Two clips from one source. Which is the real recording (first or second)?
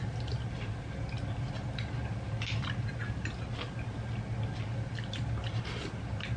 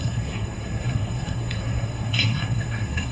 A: first